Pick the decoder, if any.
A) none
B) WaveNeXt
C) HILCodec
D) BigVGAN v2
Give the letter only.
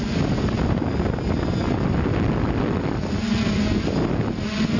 A